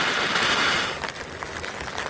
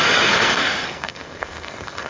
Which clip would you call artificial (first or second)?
second